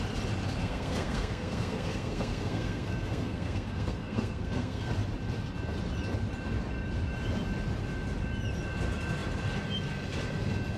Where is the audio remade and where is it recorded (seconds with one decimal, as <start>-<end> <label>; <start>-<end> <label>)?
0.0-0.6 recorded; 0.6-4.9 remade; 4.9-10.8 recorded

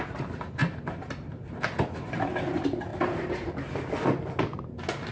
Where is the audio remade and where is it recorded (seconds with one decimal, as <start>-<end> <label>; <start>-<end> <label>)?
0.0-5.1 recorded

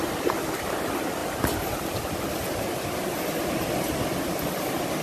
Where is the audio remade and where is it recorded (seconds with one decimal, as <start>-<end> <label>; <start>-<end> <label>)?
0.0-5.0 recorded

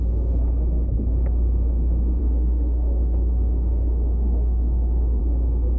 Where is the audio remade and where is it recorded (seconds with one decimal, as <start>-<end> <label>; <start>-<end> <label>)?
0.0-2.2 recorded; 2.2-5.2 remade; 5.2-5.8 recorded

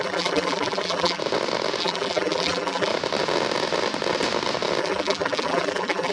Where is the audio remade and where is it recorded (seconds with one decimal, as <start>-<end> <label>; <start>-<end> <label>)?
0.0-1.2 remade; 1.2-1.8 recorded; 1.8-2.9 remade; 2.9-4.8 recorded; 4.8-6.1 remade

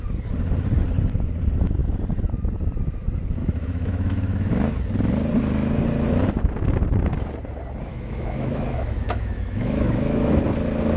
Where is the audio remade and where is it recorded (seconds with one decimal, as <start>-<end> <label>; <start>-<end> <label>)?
0.0-3.4 recorded; 3.4-4.5 remade; 4.5-7.9 recorded; 7.9-10.3 remade; 10.3-11.0 recorded

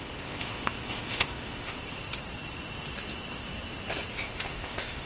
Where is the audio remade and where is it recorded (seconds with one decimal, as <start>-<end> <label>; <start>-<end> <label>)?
0.0-1.8 remade; 1.8-4.1 recorded; 4.1-5.1 remade

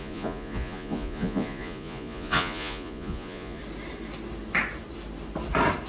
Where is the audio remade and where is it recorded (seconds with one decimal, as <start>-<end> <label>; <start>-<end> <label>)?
0.0-3.6 remade; 3.6-5.9 recorded